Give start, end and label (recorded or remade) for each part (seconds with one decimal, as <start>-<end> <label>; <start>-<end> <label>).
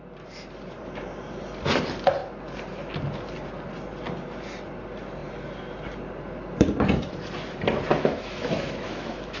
0.0-7.9 recorded; 7.9-9.4 remade